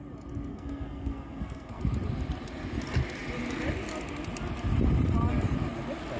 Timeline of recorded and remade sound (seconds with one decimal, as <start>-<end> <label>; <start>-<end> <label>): 0.0-0.5 recorded; 0.5-1.8 remade; 1.8-6.2 recorded